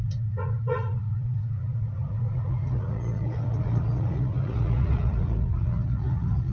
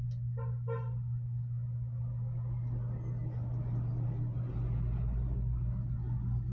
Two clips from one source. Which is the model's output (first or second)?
first